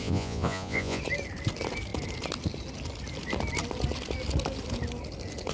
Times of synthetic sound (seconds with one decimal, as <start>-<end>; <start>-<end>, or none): 0.0-1.0